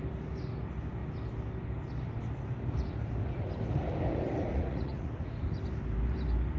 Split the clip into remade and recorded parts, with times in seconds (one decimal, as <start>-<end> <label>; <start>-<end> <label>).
0.0-4.5 recorded; 4.5-5.1 remade; 5.1-6.6 recorded